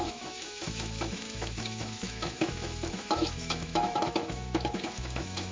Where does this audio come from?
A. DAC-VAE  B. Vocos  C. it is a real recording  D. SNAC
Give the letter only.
A